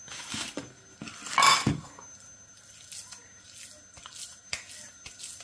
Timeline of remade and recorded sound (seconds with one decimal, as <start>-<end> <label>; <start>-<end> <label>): 0.0-5.4 recorded